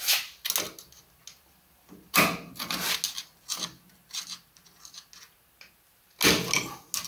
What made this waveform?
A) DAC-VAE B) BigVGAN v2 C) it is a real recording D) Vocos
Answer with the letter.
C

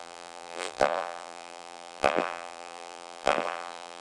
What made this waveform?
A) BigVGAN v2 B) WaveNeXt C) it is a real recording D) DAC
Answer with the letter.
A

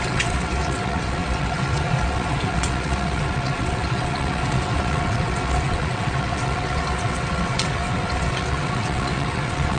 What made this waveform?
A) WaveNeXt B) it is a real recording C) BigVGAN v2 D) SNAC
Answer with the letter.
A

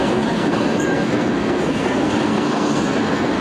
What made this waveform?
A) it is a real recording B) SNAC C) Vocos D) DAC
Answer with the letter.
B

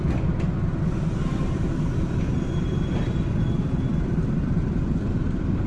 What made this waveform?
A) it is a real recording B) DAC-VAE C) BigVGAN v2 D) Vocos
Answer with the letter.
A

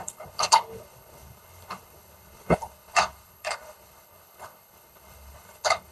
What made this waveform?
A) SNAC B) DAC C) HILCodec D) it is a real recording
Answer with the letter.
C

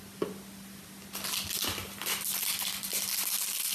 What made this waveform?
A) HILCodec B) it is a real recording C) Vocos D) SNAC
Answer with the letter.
B